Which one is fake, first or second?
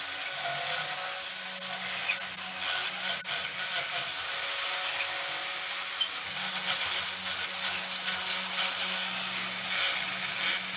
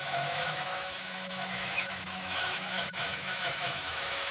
second